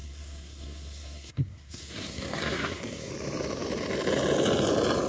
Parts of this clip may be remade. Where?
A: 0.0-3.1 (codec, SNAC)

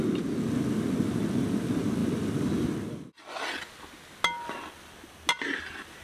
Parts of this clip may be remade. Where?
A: none

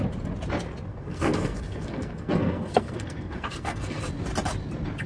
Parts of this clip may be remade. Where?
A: 0.9-4.0 (codec, SNAC)

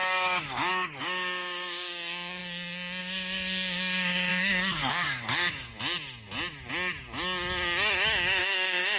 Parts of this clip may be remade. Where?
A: 0.0-2.4 (codec, DAC); 3.0-5.7; 8.4-9.0

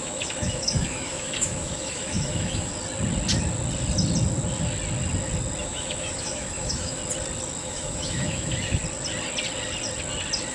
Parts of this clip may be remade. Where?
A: 0.0-2.7 (autoencoder, DAC-VAE); 5.6-7.0; 7.6-8.8